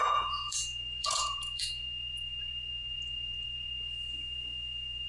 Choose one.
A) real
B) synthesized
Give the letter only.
B